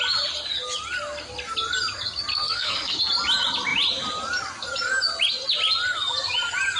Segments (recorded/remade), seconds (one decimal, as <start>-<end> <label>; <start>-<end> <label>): 0.0-2.3 recorded; 2.3-3.0 remade; 3.0-6.8 recorded